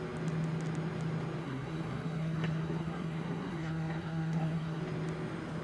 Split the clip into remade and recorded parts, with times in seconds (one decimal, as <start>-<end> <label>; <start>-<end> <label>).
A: 0.0-1.4 recorded; 1.4-4.8 remade; 4.8-5.6 recorded